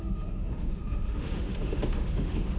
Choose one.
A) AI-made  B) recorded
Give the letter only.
A